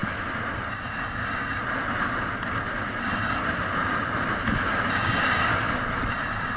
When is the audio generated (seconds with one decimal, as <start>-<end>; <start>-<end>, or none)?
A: 0.7-1.6; 3.0-3.4; 4.9-5.5; 6.1-6.6